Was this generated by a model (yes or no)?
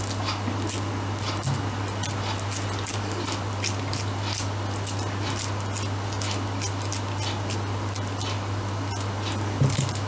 no